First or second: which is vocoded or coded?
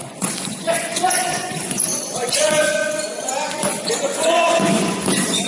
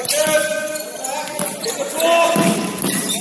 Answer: first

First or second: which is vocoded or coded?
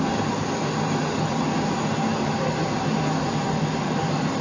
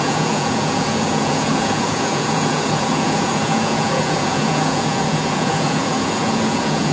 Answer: second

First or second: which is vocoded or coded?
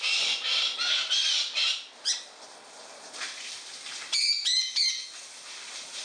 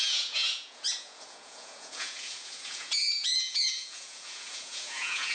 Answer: second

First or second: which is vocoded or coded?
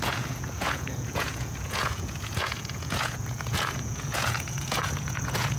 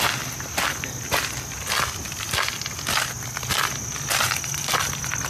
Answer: first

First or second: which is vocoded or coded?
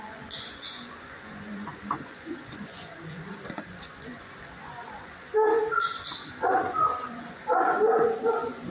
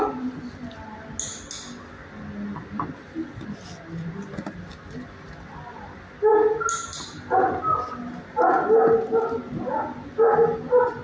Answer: first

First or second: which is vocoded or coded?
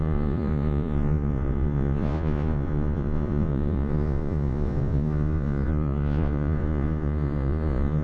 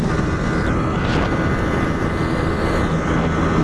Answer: first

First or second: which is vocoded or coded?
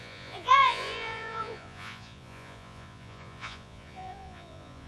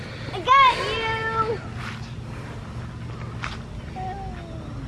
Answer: first